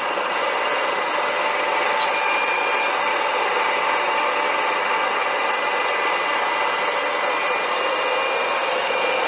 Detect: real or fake real